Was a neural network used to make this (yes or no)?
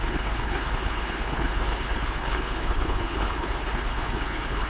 yes